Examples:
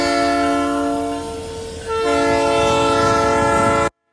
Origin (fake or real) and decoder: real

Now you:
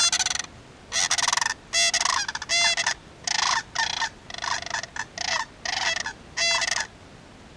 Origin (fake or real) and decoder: real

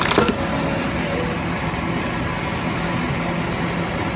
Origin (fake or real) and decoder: real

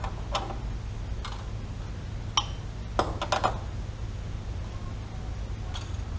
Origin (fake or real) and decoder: real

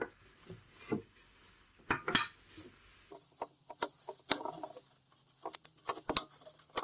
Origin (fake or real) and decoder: real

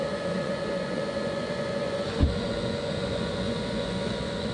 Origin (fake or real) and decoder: fake, vocoder, Vocos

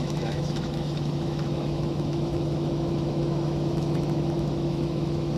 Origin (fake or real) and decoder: fake, autoencoder, DAC-VAE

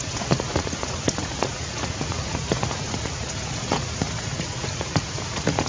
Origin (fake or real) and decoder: fake, vocoder, Vocos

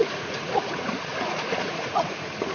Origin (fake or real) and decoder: fake, vocoder, Vocos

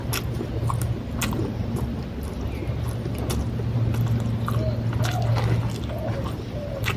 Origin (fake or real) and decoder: real